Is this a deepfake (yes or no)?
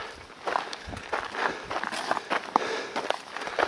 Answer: no